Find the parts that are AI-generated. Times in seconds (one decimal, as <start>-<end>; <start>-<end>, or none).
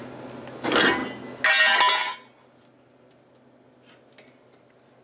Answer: none